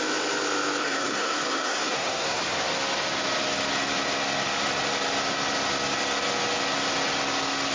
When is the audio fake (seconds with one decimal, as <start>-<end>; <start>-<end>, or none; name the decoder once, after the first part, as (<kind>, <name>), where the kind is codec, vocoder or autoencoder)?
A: 0.8-2.4 (codec, SNAC)